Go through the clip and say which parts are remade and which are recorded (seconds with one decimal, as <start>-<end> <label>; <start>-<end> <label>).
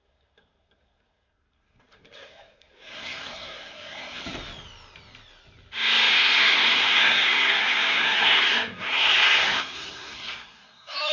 0.0-4.2 remade; 4.2-6.1 recorded; 6.1-11.1 remade